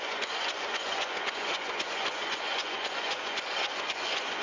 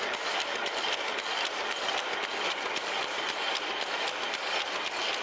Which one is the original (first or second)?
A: second